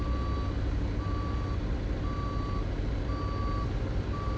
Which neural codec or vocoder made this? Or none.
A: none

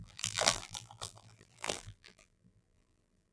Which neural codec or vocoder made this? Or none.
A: vocoder, BigVGAN v2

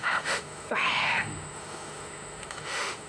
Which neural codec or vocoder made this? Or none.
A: autoencoder, DAC-VAE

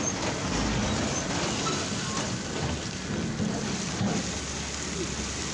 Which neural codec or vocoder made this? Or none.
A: none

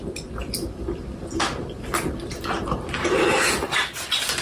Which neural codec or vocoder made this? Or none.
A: none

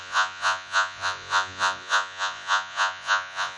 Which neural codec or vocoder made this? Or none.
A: vocoder, Vocos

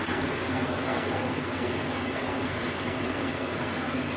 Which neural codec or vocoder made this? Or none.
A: codec, SNAC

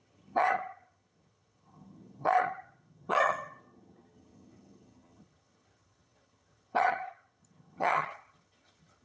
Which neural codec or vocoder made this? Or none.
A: vocoder, HiFi-GAN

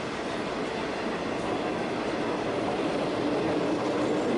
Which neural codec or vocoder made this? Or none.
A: none